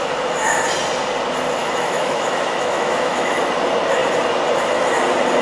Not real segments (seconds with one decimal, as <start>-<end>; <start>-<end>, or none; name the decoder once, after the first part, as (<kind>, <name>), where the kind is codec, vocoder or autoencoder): 1.6-3.4 (autoencoder, DAC-VAE)